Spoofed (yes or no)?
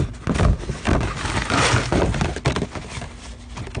no